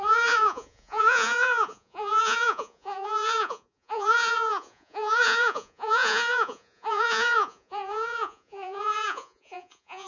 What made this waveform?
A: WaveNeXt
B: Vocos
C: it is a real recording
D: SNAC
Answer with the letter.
B